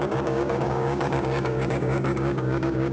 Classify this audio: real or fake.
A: fake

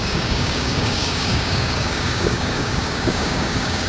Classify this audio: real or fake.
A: fake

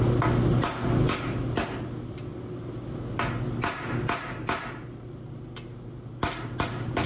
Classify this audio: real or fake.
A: real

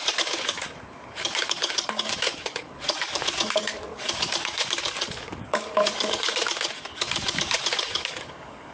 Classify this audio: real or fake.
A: fake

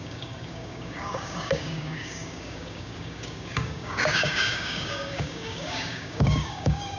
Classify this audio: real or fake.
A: fake